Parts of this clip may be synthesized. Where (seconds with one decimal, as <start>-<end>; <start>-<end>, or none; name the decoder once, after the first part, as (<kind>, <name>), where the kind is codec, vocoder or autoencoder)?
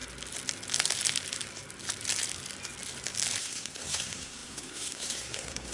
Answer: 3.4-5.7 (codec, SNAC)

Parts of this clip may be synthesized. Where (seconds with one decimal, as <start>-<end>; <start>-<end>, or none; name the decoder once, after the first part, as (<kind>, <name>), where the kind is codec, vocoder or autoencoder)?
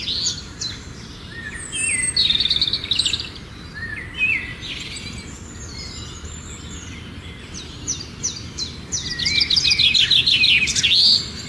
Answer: none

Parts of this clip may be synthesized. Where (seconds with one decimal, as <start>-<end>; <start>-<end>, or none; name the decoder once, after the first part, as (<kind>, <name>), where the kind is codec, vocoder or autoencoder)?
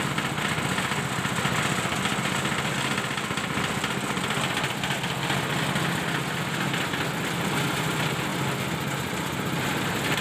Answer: none